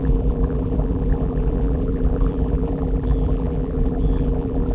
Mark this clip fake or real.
fake